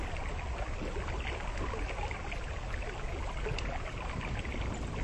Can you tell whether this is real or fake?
real